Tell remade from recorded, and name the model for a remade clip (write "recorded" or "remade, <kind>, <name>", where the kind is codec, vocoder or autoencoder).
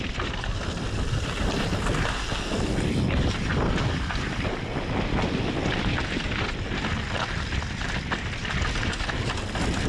recorded